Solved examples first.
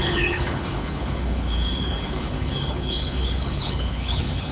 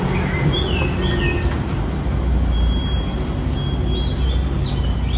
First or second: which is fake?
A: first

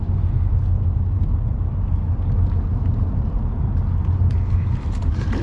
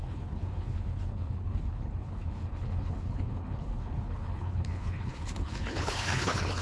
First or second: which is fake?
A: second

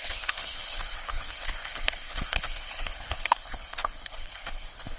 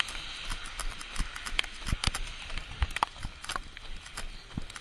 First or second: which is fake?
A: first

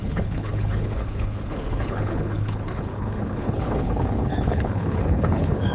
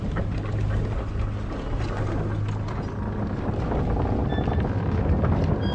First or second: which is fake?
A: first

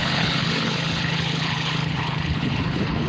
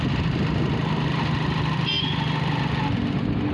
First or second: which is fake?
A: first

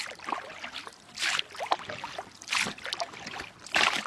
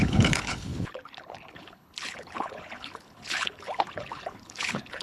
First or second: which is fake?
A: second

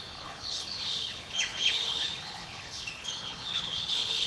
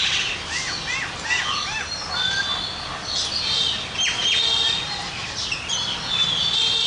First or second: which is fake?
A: first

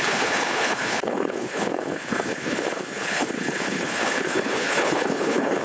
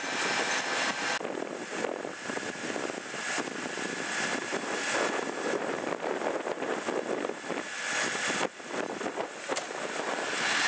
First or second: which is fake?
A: first